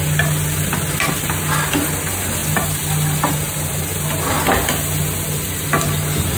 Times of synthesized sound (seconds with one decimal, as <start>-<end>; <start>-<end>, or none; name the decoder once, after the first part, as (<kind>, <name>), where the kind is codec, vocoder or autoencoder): none